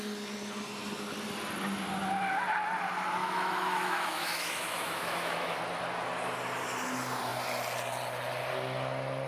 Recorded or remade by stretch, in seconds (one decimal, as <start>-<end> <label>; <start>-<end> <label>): 0.0-3.2 recorded; 3.2-5.6 remade; 5.6-9.3 recorded

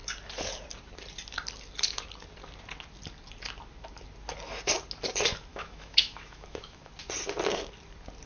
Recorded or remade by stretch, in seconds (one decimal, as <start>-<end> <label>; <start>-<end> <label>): 0.0-5.5 recorded; 5.5-6.9 remade; 6.9-8.3 recorded

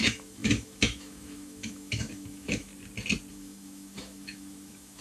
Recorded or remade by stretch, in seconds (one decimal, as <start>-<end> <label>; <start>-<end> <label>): 0.0-2.7 remade; 2.7-3.3 recorded; 3.3-5.0 remade